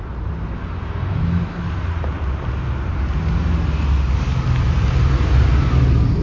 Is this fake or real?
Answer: real